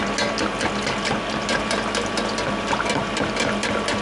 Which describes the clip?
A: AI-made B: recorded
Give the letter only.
B